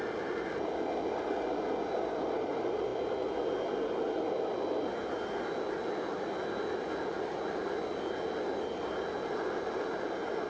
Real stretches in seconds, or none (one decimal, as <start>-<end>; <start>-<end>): 0.0-10.5